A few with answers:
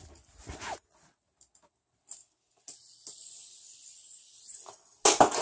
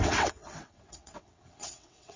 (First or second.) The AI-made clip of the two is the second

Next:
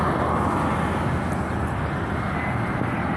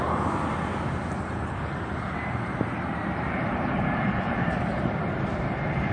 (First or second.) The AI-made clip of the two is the second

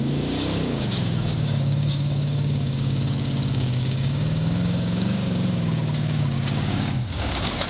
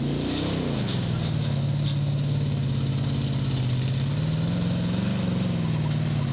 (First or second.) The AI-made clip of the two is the first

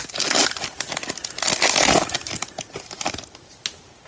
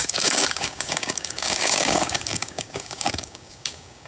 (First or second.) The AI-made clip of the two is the second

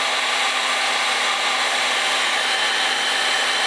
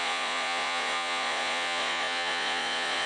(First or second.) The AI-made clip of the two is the second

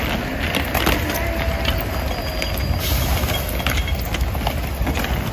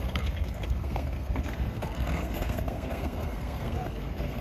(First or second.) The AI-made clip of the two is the second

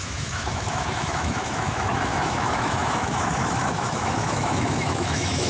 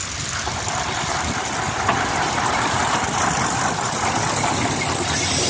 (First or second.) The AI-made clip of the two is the first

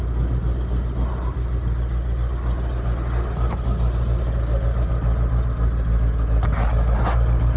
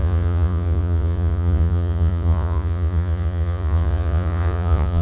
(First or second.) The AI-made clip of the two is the second